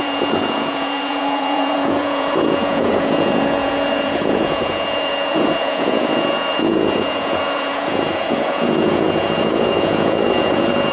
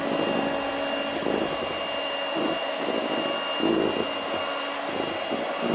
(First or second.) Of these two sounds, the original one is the second